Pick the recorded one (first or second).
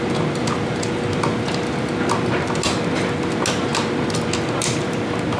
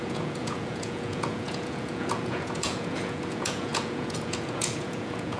first